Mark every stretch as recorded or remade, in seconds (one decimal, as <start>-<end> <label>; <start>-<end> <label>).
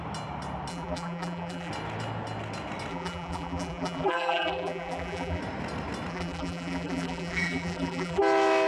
0.0-0.7 recorded; 0.7-1.7 remade; 1.7-2.9 recorded; 2.9-5.4 remade; 5.4-6.1 recorded; 6.1-8.2 remade; 8.2-8.7 recorded